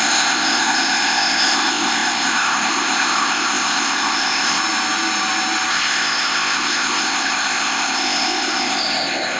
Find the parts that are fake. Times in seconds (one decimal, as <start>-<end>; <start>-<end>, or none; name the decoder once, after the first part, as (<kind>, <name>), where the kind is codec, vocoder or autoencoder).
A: 0.0-4.6 (codec, ZipCodec); 5.7-9.4